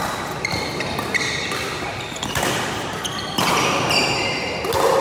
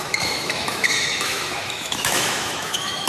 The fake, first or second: second